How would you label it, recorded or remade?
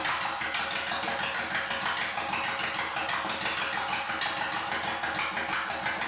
recorded